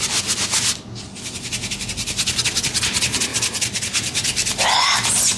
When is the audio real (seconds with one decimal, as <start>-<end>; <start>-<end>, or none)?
0.0-5.4